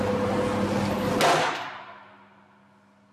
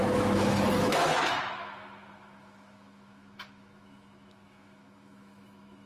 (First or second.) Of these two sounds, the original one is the first